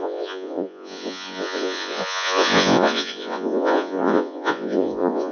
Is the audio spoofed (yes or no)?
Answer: yes